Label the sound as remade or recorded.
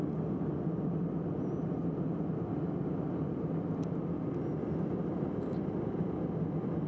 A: recorded